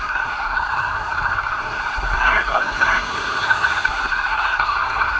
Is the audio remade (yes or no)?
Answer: yes